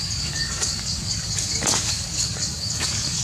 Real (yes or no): no